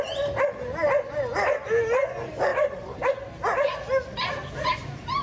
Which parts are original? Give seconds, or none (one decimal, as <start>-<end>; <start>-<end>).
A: 0.0-2.5; 3.1-5.2